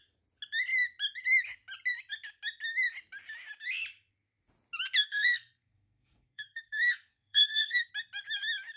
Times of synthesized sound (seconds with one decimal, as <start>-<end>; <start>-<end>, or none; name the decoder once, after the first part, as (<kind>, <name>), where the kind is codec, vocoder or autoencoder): 5.0-7.9 (codec, SNAC)